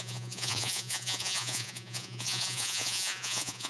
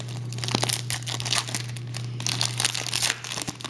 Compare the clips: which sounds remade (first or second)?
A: first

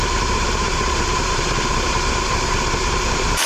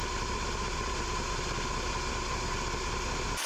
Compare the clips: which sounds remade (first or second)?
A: first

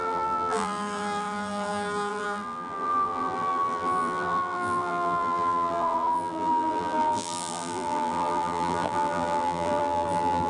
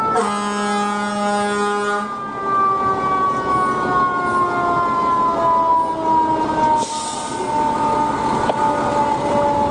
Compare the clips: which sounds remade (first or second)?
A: first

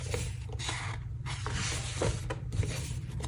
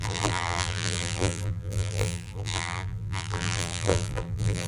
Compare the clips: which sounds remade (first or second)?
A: second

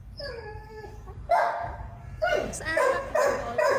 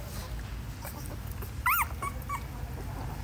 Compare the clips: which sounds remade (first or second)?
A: first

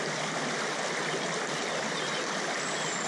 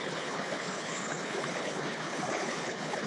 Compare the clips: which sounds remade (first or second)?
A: second